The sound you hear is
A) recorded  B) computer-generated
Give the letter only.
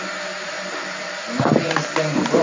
A